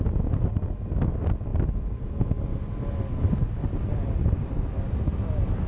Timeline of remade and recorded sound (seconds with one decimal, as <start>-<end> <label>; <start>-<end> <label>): 0.0-5.7 recorded